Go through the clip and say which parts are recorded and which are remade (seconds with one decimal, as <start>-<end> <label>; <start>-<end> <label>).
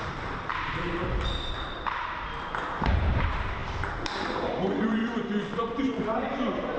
0.0-5.0 remade; 5.0-5.8 recorded; 5.8-6.8 remade